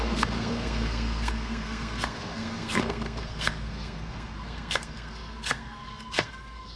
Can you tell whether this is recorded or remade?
remade